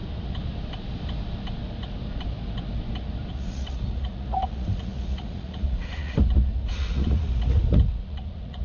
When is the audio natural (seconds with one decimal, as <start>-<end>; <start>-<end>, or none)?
0.0-3.3